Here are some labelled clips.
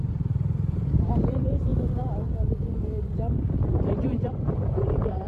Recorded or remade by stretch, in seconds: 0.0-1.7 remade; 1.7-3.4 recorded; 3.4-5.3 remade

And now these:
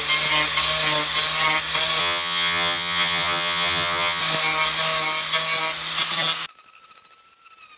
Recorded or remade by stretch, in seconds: 0.0-2.0 recorded; 2.0-4.2 remade; 4.2-7.8 recorded

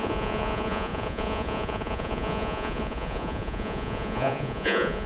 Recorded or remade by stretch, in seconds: 0.0-5.1 remade